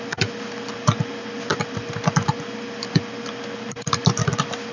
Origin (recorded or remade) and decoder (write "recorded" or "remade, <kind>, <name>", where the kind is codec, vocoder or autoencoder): recorded